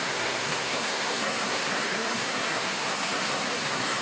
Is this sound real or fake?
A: fake